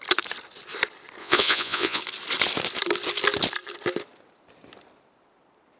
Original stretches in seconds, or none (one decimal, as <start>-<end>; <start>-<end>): 0.0-1.2; 2.0-5.8